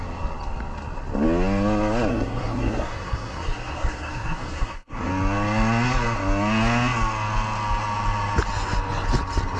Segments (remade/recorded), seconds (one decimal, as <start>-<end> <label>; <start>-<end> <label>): 0.0-2.1 recorded; 2.1-5.1 remade; 5.1-9.6 recorded